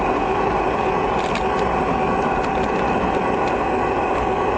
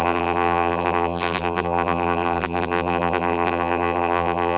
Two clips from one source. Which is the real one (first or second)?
first